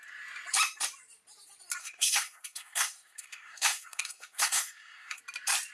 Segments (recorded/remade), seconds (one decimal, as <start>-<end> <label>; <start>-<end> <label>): 0.0-1.8 recorded; 1.8-5.2 remade; 5.2-5.7 recorded